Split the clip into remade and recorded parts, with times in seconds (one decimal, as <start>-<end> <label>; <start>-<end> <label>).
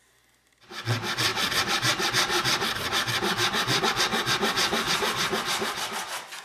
0.0-6.4 recorded